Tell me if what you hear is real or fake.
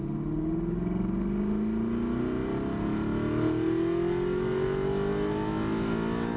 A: real